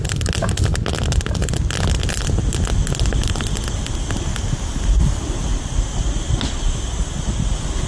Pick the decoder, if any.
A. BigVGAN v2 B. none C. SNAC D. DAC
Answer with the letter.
B